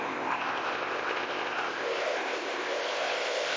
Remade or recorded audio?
remade